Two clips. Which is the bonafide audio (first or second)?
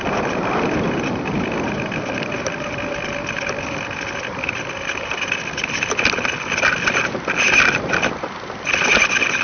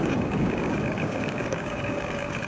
first